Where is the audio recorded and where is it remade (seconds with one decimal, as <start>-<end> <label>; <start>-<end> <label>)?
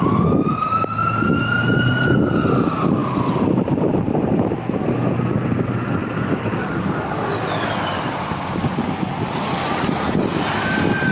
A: 0.0-3.0 recorded; 3.0-4.5 remade; 4.5-6.0 recorded; 6.0-7.3 remade; 7.3-11.1 recorded